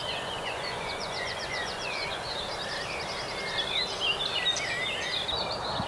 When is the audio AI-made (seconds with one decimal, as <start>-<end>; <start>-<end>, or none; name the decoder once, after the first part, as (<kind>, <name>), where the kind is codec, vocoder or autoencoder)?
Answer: 0.0-2.4 (vocoder, Vocos)